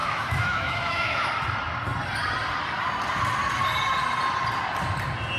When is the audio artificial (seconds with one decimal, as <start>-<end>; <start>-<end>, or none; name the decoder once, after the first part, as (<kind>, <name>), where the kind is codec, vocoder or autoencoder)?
0.0-1.3 (autoencoder, DAC-VAE)